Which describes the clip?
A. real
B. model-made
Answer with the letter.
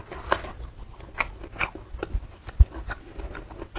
A